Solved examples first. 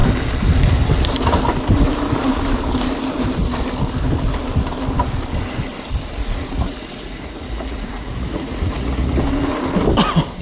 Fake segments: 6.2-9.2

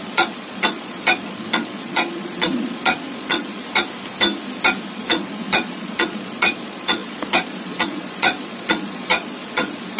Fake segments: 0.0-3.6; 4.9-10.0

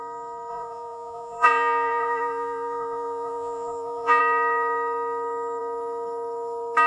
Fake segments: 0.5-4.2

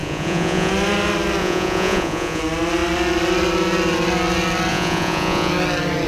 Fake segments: 0.0-0.7; 1.4-2.4; 4.7-5.5

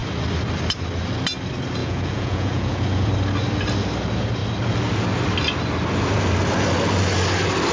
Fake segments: 1.8-3.1

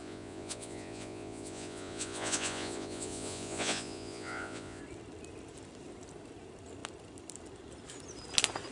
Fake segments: 0.0-4.8